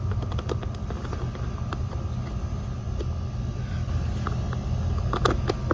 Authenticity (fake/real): real